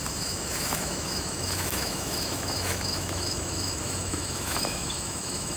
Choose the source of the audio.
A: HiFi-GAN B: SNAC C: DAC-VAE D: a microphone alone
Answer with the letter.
C